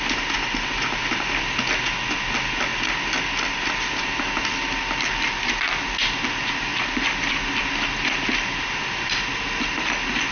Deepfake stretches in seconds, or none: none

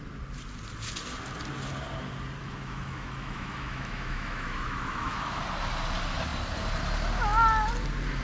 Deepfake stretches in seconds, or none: 2.4-5.4 (autoencoder, DAC-VAE)

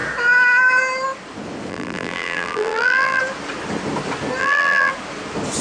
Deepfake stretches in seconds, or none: 1.7-3.2 (vocoder, BigVGAN v2); 4.4-4.9

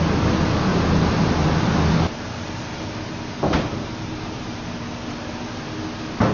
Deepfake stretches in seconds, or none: 0.7-1.2 (vocoder, BigVGAN v2); 3.7-4.9